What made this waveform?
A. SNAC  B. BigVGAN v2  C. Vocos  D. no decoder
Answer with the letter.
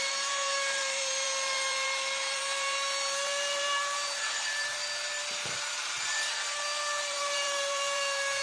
B